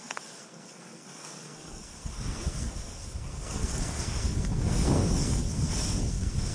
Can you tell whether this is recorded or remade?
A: remade